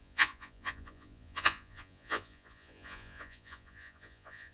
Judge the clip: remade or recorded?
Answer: remade